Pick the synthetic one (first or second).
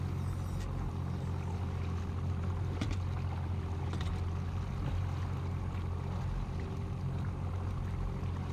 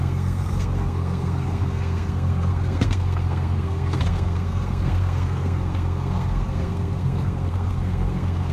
second